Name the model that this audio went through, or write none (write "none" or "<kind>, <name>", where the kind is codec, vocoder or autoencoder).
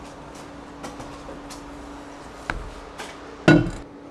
none